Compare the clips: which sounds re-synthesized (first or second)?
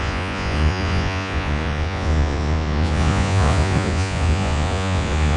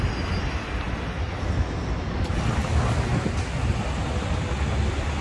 first